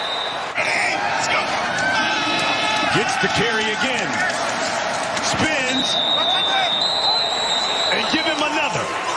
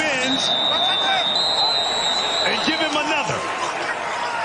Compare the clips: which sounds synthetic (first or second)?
first